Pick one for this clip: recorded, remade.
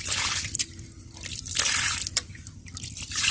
recorded